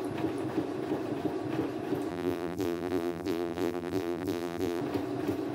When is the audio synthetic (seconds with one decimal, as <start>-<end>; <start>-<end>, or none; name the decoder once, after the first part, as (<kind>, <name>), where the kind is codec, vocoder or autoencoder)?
2.1-4.8 (vocoder, BigVGAN v2)